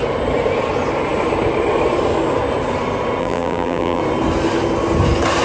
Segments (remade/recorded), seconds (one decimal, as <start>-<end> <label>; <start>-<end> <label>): 0.0-3.2 recorded; 3.2-4.0 remade; 4.0-5.4 recorded